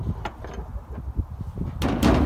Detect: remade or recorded recorded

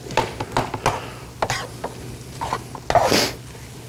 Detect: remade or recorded recorded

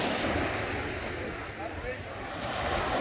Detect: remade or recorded recorded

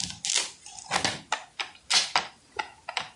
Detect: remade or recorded recorded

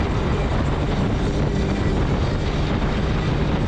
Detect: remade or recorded recorded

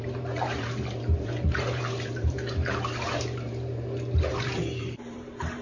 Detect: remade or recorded remade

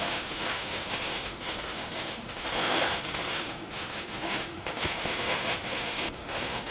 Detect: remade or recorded remade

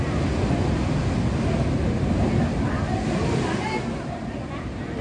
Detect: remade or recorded recorded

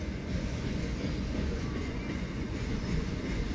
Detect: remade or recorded remade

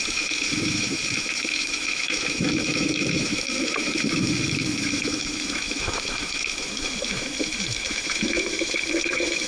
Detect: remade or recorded remade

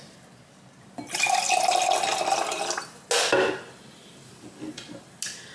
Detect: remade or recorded recorded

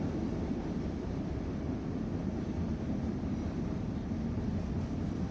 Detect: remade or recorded recorded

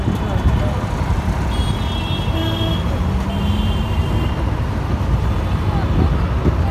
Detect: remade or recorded recorded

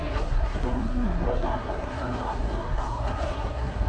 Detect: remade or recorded remade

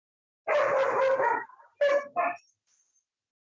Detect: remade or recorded recorded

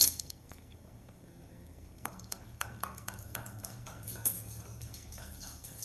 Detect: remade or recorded remade